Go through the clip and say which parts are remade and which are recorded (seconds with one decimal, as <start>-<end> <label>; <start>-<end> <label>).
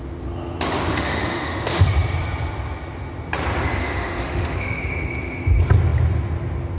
0.0-0.9 recorded; 0.9-1.8 remade; 1.8-3.8 recorded; 3.8-4.8 remade; 4.8-6.8 recorded